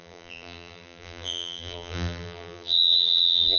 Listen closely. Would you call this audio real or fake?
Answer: fake